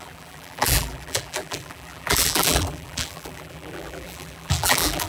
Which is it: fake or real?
fake